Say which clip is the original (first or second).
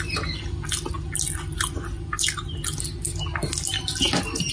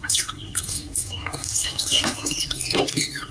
first